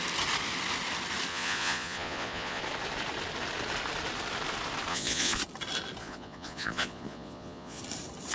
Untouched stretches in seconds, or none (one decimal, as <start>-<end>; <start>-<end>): 0.0-1.3; 2.6-4.9; 5.4-6.0; 7.8-8.3